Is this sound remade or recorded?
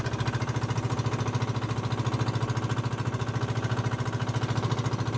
recorded